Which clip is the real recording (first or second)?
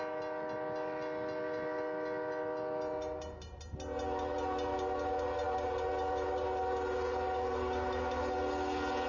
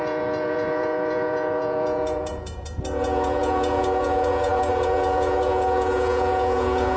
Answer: first